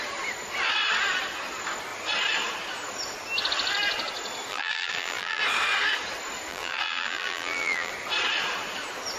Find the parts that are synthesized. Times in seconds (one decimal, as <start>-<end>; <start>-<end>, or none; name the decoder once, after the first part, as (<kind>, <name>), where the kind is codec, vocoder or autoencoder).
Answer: 4.5-5.4 (vocoder, BigVGAN v2); 6.5-7.9